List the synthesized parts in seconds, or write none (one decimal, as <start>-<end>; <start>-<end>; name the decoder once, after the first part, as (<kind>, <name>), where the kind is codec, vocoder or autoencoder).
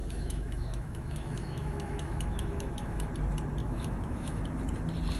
0.0-3.1 (autoencoder, DAC-VAE); 3.6-4.4